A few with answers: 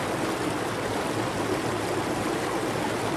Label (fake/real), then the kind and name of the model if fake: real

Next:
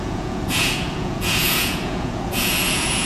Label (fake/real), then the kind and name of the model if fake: fake, vocoder, Vocos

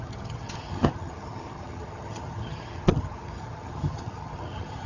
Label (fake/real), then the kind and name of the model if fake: fake, vocoder, HiFi-GAN